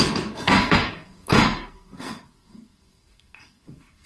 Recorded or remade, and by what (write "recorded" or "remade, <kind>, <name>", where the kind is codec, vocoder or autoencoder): remade, codec, SNAC